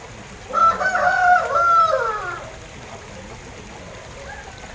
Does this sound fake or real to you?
real